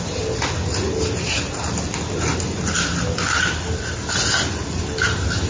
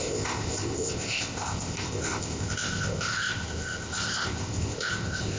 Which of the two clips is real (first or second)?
first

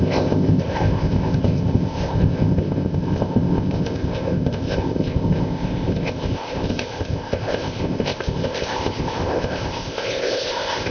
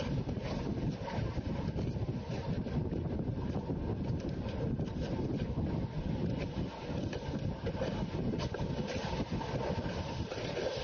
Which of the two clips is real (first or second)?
second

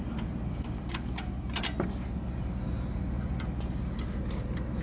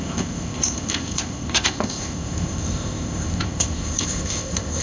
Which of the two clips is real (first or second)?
first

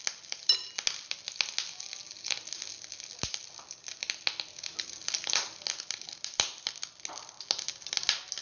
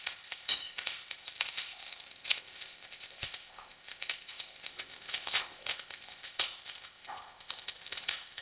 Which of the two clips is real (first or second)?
first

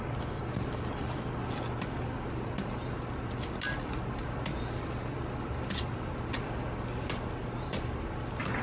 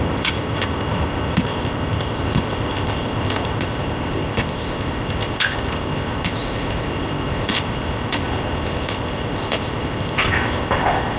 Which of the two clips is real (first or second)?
first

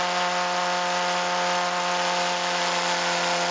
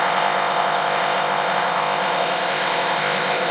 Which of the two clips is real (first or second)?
first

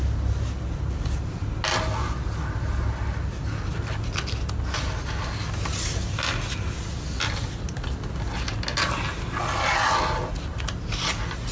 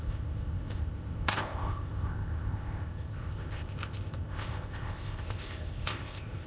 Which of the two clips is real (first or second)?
first